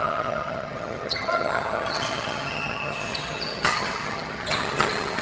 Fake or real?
fake